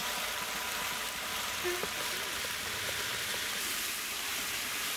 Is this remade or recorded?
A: remade